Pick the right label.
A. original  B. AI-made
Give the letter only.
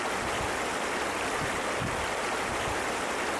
A